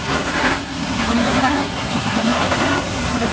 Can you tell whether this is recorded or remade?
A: remade